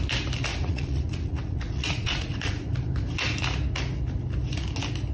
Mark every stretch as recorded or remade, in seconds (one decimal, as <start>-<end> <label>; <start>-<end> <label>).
0.0-0.5 recorded; 0.5-2.8 remade; 2.8-5.1 recorded